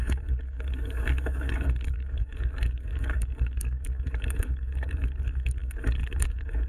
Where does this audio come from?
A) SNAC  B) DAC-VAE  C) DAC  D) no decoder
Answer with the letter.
C